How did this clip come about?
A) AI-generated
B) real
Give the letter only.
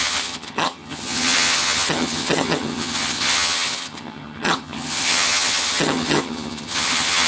A